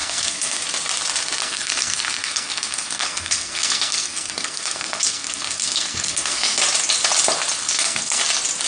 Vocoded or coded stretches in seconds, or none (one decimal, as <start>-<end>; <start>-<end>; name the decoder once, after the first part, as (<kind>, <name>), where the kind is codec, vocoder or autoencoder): 0.0-0.6 (codec, SNAC); 1.4-6.6; 7.6-8.2